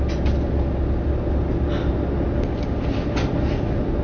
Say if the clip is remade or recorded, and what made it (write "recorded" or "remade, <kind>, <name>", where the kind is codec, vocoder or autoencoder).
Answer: recorded